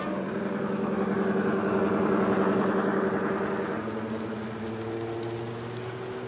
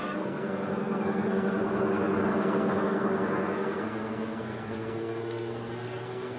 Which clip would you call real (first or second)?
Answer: first